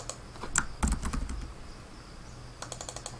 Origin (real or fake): real